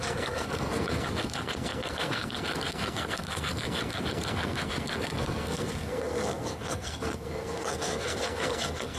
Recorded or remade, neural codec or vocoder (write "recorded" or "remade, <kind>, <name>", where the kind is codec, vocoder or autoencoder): remade, codec, SNAC